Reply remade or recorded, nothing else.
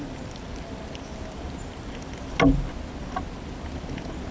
recorded